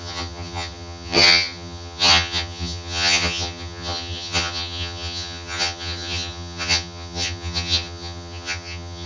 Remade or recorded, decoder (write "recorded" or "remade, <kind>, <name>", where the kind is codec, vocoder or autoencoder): remade, vocoder, HiFi-GAN